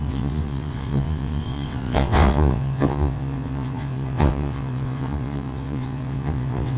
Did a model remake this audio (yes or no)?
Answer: yes